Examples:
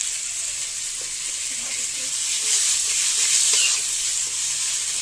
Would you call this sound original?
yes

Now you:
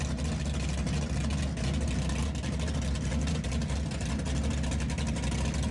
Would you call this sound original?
yes